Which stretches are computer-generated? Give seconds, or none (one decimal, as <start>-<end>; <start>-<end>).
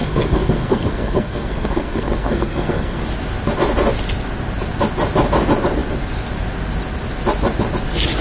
0.0-3.0